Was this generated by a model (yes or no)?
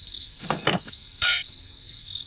yes